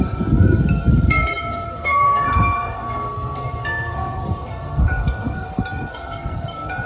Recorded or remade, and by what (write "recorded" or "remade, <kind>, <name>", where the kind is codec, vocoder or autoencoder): remade, codec, SNAC